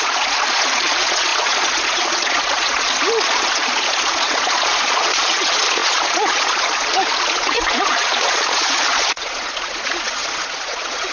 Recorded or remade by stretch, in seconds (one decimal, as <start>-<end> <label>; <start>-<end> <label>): 0.0-11.1 remade